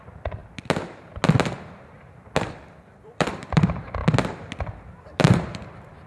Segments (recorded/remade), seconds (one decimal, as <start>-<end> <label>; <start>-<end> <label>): 0.0-0.4 remade; 0.4-2.4 recorded; 2.4-4.0 remade; 4.0-4.9 recorded; 4.9-6.1 remade